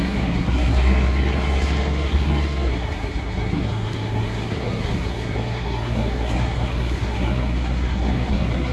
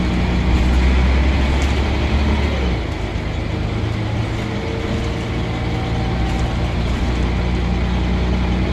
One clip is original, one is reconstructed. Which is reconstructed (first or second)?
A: first